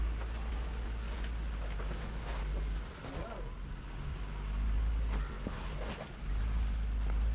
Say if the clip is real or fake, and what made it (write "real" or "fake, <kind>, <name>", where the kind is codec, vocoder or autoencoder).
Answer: real